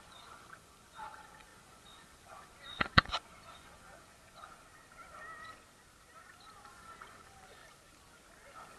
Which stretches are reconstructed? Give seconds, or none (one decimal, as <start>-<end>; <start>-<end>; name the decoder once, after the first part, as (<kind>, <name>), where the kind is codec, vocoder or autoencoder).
0.0-4.4 (vocoder, Vocos); 6.7-7.6